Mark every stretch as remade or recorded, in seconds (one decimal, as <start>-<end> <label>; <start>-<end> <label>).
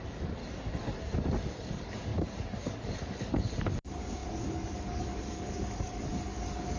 0.0-0.4 remade; 0.4-1.0 recorded; 1.0-6.8 remade